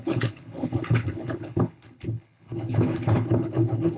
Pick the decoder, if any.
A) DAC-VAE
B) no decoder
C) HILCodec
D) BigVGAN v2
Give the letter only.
C